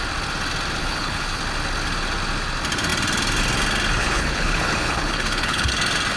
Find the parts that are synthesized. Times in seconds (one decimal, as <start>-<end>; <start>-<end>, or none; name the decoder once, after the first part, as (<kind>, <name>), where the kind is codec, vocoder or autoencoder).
0.8-1.4 (codec, HILCodec); 4.0-5.7